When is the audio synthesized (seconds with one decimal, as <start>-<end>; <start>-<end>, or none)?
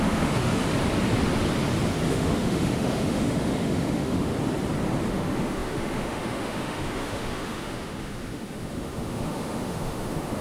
0.0-0.6; 2.1-4.3; 5.1-10.4